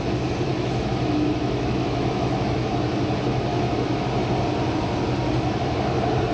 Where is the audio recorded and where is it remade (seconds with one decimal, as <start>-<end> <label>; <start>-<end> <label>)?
0.0-0.5 recorded; 0.5-2.7 remade; 2.7-3.5 recorded; 3.5-4.2 remade; 4.2-6.3 recorded